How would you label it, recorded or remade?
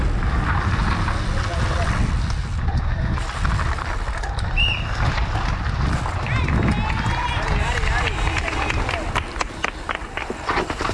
recorded